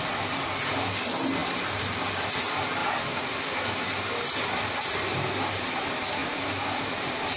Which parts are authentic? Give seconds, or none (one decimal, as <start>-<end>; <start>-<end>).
0.0-7.4